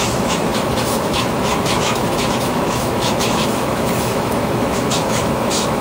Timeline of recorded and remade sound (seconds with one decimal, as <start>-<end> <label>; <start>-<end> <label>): 0.0-5.8 remade